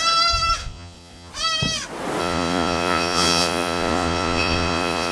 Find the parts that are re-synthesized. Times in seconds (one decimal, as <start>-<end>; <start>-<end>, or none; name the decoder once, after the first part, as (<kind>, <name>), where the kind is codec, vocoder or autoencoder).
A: 0.6-1.3 (vocoder, Vocos); 2.2-5.1